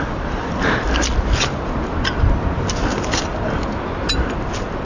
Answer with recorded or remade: recorded